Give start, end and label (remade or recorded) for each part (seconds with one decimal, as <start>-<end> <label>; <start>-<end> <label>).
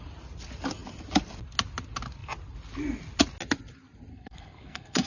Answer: 0.0-4.1 recorded; 4.1-5.1 remade